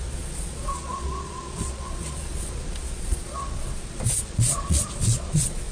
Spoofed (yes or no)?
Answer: yes